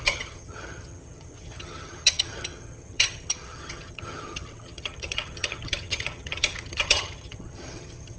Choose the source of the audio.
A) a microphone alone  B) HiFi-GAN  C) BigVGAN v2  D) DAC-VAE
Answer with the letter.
B